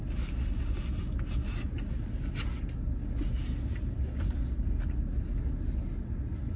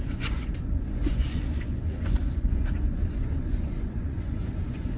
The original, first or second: first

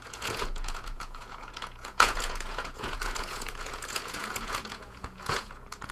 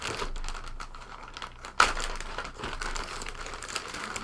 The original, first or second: second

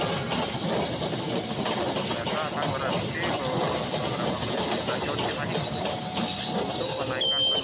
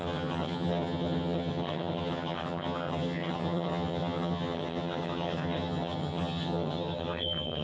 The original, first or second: first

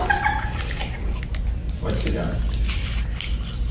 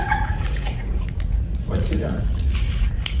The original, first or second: first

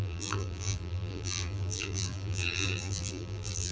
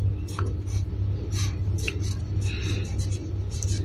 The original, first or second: second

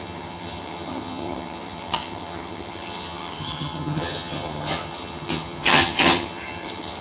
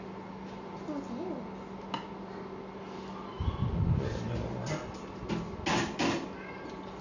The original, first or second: second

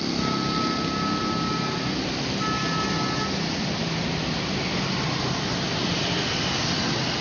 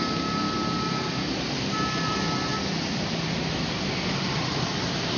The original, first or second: first